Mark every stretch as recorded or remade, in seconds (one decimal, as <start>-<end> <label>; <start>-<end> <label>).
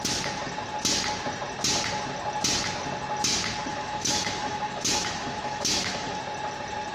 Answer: 0.0-3.7 recorded; 3.7-6.2 remade; 6.2-6.9 recorded